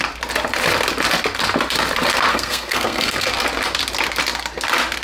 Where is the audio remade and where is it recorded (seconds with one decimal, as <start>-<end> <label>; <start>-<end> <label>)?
0.0-2.3 recorded; 2.3-3.3 remade; 3.3-5.0 recorded